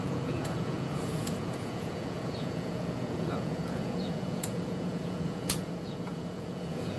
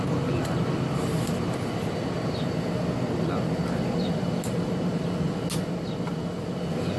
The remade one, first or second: first